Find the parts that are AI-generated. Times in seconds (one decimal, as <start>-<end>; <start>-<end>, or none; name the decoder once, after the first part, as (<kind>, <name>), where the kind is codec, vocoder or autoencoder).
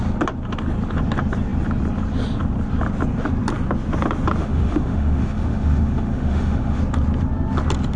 4.4-6.8 (autoencoder, DAC-VAE)